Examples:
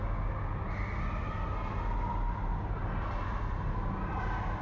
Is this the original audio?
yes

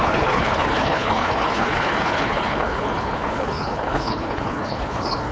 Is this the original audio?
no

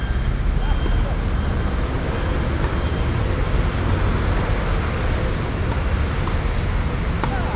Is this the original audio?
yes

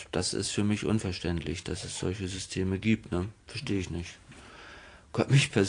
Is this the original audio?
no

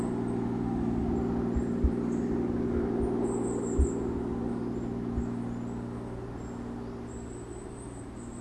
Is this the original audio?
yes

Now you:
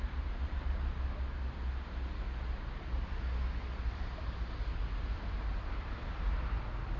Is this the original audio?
yes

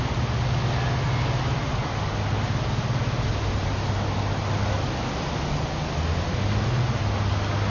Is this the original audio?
yes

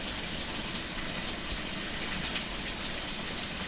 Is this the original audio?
yes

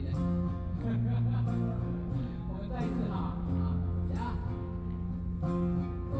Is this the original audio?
yes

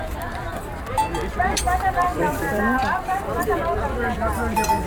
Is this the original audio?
no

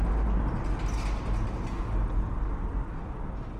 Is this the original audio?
yes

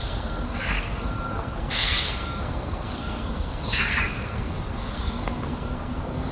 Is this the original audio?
no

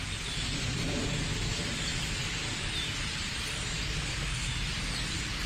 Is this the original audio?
yes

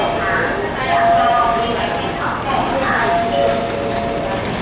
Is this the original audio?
yes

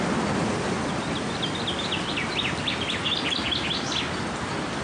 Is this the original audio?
yes